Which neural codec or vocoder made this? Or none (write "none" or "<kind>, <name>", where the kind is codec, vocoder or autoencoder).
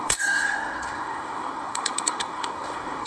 codec, SNAC